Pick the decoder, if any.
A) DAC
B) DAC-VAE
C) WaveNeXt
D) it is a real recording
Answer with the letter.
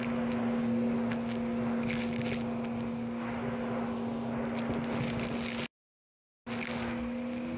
D